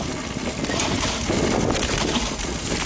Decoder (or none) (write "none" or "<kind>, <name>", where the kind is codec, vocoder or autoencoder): none